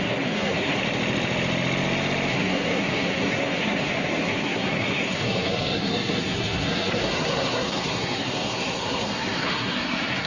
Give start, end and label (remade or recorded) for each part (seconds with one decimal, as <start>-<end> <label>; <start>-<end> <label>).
0.0-0.8 remade; 0.8-2.3 recorded; 2.3-10.3 remade